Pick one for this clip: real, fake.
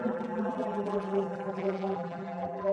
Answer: fake